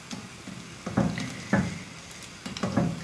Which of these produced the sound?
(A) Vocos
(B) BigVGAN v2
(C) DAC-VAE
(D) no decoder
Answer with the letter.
D